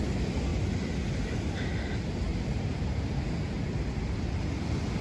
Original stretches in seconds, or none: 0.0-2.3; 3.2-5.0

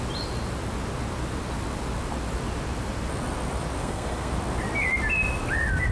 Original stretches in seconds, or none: 0.0-3.8; 4.3-5.9

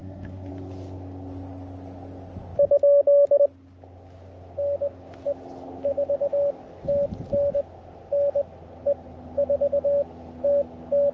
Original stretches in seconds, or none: 0.5-11.1

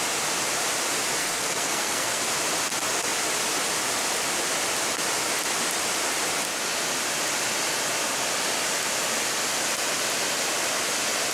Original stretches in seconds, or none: 0.0-1.2; 2.2-11.3

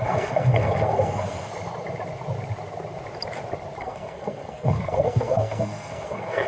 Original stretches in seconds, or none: 1.5-3.8

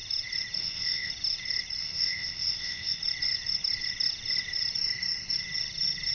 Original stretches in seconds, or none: 0.0-0.6; 1.1-1.8; 3.0-6.1